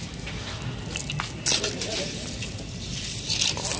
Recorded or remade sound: recorded